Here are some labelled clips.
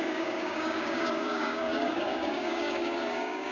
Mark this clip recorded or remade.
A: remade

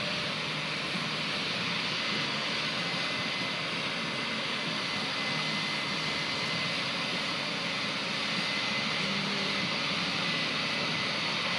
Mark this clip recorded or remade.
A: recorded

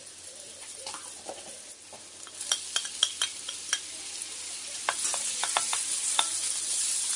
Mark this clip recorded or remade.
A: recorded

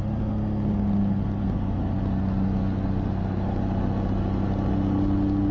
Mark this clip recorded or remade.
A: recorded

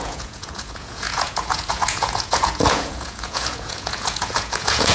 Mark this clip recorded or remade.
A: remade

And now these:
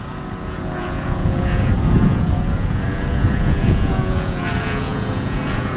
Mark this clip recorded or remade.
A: remade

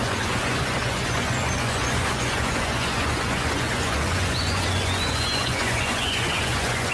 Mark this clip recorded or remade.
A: remade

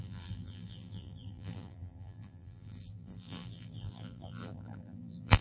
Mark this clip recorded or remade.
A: remade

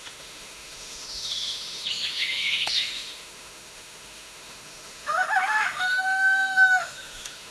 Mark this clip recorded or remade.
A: remade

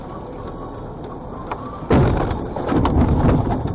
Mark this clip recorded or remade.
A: recorded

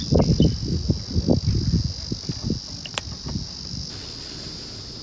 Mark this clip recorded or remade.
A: recorded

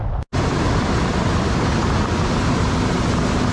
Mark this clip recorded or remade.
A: recorded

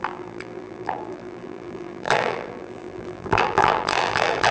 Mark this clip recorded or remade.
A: remade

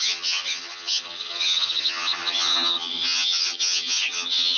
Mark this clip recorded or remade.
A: remade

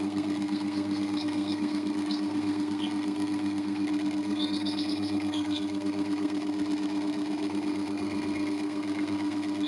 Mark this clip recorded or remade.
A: remade